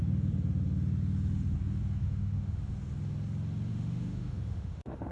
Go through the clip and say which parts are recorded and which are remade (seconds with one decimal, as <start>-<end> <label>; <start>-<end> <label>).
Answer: 0.0-2.0 recorded; 2.0-2.7 remade; 2.7-3.7 recorded; 3.7-5.1 remade

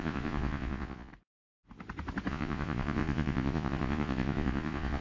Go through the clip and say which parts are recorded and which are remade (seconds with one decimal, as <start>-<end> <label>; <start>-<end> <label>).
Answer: 0.0-1.1 remade; 1.1-2.3 recorded; 2.3-5.0 remade

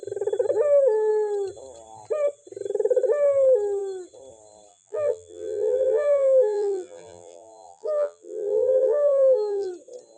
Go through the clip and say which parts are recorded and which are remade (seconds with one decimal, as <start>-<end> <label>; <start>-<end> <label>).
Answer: 0.0-4.7 recorded; 4.7-9.7 remade; 9.7-10.2 recorded

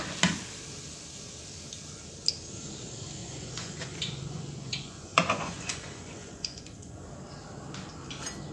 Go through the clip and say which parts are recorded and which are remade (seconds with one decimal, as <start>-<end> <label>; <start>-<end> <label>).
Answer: 0.0-3.2 recorded; 3.2-7.1 remade; 7.1-8.5 recorded

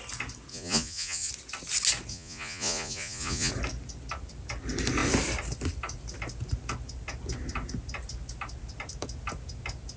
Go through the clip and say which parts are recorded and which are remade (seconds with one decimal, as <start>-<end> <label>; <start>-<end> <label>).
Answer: 0.0-0.5 recorded; 0.5-1.3 remade; 1.3-2.1 recorded; 2.1-3.5 remade; 3.5-10.0 recorded